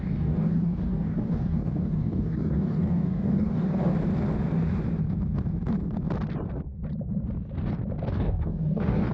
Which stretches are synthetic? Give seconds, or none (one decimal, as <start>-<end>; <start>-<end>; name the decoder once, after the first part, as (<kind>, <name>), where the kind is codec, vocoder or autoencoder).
0.0-3.9 (codec, DAC); 8.1-9.1